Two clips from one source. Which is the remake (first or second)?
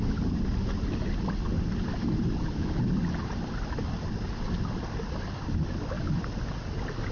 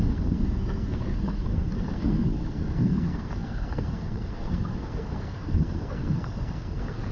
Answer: second